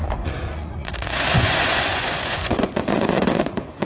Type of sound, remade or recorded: remade